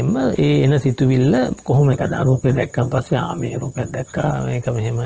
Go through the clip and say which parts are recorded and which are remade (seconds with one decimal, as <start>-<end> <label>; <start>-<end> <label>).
0.0-1.8 recorded; 1.8-4.3 remade; 4.3-5.1 recorded